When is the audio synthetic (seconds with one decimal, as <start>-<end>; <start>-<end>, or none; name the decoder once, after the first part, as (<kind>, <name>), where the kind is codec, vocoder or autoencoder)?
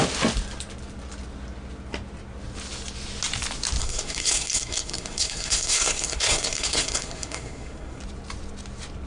3.8-8.0 (codec, SNAC)